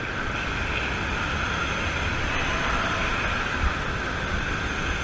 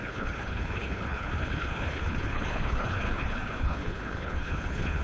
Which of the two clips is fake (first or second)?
second